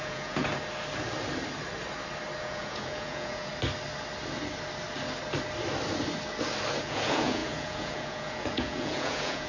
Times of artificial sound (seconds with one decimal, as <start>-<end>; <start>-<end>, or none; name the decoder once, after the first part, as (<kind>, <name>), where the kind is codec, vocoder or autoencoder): 0.0-0.5 (vocoder, Vocos); 2.4-3.5; 6.8-9.5